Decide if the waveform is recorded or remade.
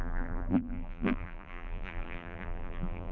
remade